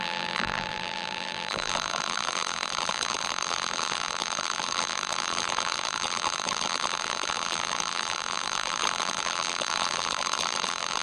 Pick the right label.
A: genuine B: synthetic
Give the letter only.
B